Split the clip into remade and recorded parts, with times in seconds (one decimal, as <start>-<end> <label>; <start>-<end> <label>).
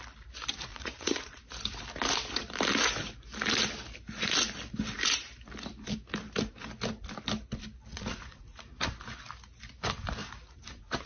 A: 0.0-0.7 recorded; 0.7-1.4 remade; 1.4-7.9 recorded; 7.9-8.8 remade; 8.8-10.2 recorded; 10.2-11.1 remade